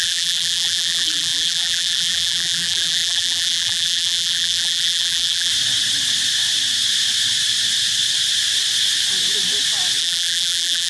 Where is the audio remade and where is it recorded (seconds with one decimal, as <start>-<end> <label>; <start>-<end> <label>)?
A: 0.0-5.5 remade; 5.5-10.0 recorded; 10.0-10.9 remade